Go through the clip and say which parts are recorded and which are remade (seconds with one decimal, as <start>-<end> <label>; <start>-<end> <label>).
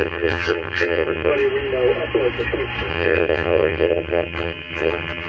0.0-1.3 remade; 1.3-2.9 recorded; 2.9-5.3 remade